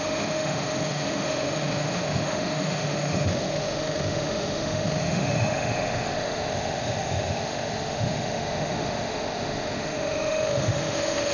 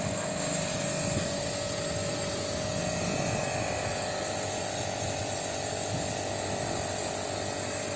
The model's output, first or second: first